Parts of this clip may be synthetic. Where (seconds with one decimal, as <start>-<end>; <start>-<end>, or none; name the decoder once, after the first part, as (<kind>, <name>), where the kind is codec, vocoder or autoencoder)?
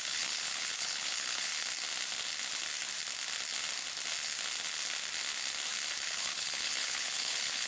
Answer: 0.0-1.5 (codec, HILCodec); 6.1-7.7